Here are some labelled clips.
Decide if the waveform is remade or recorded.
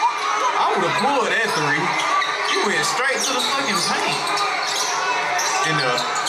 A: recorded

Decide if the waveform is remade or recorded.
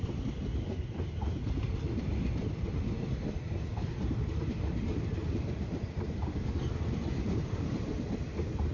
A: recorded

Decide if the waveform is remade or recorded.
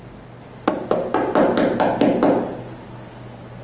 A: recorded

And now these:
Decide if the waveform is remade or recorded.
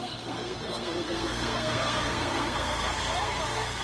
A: remade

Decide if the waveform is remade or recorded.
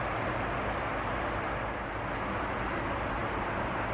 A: recorded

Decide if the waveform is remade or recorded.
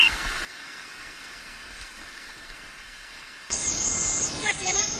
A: remade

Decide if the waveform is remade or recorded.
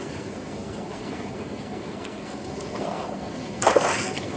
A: remade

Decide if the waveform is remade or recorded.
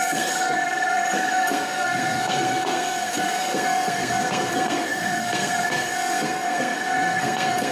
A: remade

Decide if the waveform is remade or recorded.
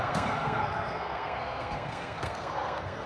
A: remade